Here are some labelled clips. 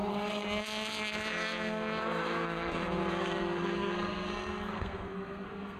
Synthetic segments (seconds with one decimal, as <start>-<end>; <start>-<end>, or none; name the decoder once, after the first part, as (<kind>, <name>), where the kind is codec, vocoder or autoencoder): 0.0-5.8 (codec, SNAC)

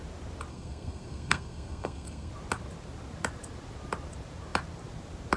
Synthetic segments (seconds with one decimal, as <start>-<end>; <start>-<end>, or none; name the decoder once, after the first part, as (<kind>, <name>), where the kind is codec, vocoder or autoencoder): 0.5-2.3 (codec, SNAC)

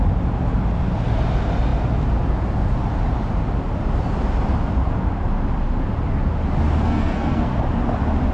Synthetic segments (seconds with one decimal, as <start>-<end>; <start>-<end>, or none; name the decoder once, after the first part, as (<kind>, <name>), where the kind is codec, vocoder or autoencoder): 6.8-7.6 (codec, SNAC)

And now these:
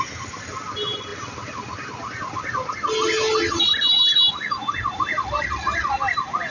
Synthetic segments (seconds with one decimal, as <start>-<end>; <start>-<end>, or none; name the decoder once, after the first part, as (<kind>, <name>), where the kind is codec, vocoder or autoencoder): none

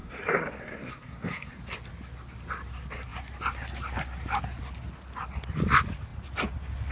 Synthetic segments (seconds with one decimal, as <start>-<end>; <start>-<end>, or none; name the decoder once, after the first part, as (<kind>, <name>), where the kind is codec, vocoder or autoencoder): 0.0-1.5 (codec, SNAC)

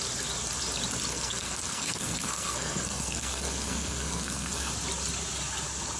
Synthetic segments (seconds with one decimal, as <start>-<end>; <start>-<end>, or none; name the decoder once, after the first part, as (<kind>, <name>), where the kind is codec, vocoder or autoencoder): 1.1-4.7 (codec, SNAC)

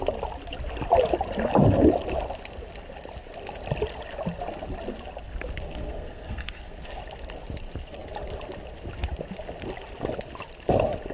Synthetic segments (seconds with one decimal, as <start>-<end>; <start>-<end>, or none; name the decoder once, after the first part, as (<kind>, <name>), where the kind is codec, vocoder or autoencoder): 5.7-7.0 (codec, SNAC)